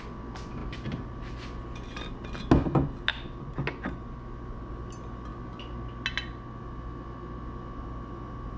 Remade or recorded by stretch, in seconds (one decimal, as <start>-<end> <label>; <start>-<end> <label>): 0.0-8.6 recorded